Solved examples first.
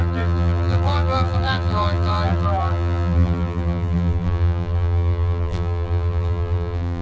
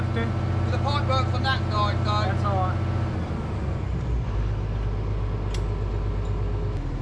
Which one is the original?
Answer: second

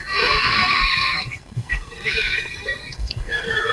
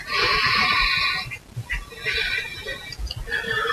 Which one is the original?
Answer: second